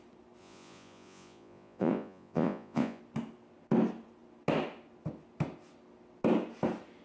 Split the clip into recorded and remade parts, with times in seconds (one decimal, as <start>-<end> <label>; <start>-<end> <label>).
0.0-0.4 recorded; 0.4-3.0 remade; 3.0-7.0 recorded